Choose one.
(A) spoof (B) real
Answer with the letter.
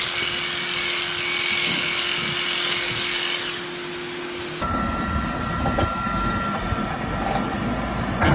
B